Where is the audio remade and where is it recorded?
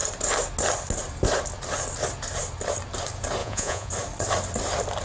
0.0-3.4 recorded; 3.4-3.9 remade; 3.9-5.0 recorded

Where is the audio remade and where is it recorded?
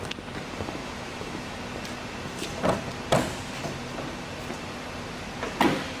0.0-0.8 recorded; 0.8-1.6 remade; 1.6-6.0 recorded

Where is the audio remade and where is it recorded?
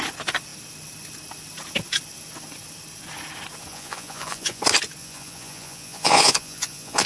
0.0-3.7 recorded; 3.7-4.6 remade; 4.6-5.0 recorded; 5.0-7.1 remade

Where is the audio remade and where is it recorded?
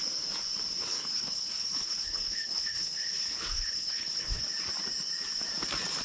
0.0-0.8 recorded; 0.8-4.4 remade; 4.4-6.0 recorded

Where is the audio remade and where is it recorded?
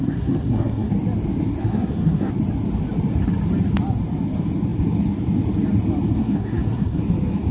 0.0-0.9 remade; 0.9-1.6 recorded; 1.6-2.3 remade; 2.3-6.2 recorded; 6.2-7.0 remade; 7.0-7.5 recorded